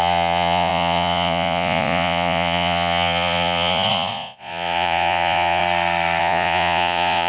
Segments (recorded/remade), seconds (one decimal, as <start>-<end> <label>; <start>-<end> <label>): 0.0-5.6 remade; 5.6-6.2 recorded; 6.2-7.3 remade